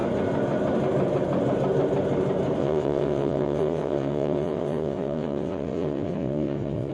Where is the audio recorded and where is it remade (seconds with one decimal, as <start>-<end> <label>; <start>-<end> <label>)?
0.0-2.6 recorded; 2.6-6.9 remade